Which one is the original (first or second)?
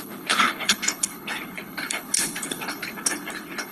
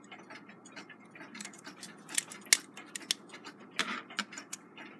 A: second